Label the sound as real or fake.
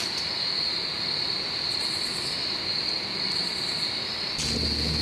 real